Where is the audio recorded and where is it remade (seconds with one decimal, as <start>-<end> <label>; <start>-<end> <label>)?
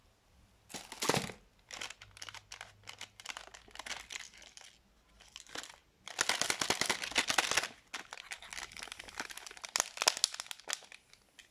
0.0-11.5 recorded